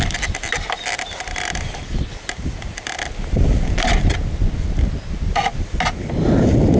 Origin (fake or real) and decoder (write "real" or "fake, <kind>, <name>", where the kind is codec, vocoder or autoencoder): real